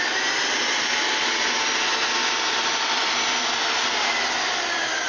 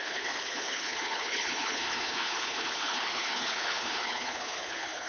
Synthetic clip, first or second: second